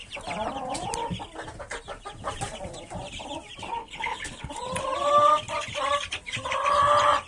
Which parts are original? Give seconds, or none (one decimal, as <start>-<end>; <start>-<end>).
0.0-3.8; 4.5-7.3